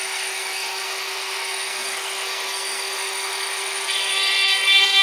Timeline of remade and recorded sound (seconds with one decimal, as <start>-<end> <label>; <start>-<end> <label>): 0.0-5.0 remade